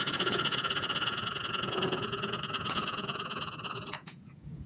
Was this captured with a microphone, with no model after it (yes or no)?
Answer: no